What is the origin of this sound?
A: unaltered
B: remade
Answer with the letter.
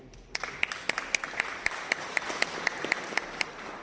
A